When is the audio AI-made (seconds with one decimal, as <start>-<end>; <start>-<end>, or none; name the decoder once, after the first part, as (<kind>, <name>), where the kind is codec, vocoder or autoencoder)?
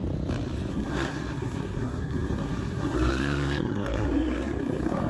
0.7-5.1 (codec, SNAC)